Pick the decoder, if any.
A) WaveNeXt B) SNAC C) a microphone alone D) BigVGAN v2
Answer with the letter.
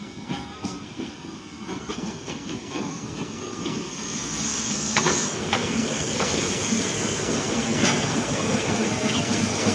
B